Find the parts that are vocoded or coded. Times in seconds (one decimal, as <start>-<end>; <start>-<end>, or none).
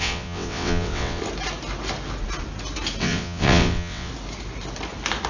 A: 0.0-1.2; 3.0-4.1